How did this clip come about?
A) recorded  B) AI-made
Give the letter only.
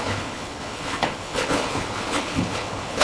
B